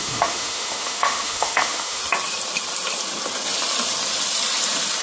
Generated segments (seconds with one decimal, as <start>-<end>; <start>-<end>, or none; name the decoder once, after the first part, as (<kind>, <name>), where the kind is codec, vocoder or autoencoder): 0.0-2.0 (autoencoder, DAC-VAE)